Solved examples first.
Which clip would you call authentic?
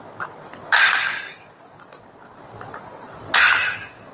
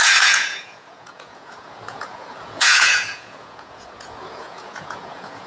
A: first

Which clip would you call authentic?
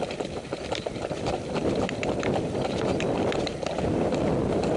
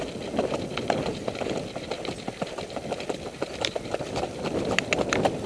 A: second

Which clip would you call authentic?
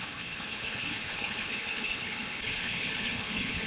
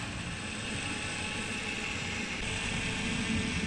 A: second